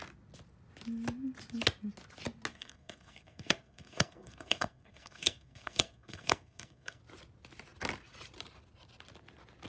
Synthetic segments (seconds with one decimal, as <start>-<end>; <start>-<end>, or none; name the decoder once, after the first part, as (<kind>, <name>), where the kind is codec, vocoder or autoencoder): 2.5-7.0 (codec, SNAC)